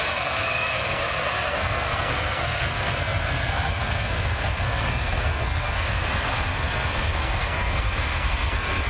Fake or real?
fake